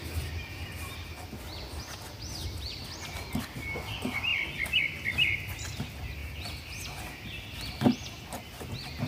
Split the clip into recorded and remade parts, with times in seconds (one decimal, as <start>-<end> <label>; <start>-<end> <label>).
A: 0.0-9.1 recorded